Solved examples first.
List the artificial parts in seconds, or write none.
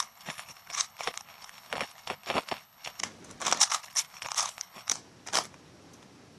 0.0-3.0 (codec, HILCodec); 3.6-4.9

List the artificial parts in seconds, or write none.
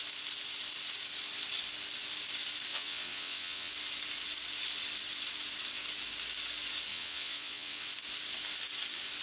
2.7-3.7 (vocoder, WaveNeXt); 6.9-7.9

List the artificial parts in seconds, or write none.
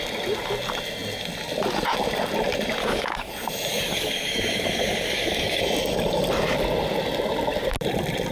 2.8-3.3 (codec, DAC); 3.7-5.6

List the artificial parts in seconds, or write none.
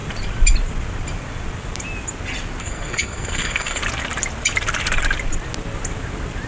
2.6-3.8 (codec, SNAC)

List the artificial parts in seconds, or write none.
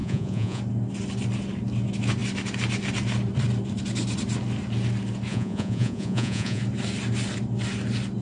0.0-0.6 (vocoder, Vocos); 5.3-6.6